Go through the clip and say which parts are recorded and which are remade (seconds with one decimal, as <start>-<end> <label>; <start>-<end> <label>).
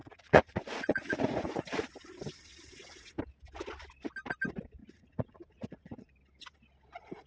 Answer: 0.0-1.9 remade; 1.9-4.8 recorded; 4.8-6.1 remade; 6.1-7.3 recorded